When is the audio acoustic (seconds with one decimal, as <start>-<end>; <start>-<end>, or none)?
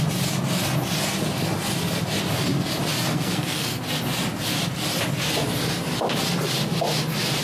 0.0-3.1; 3.8-7.4